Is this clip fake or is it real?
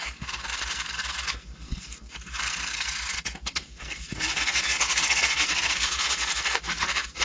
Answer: fake